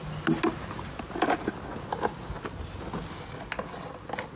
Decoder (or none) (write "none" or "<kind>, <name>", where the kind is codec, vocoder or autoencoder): none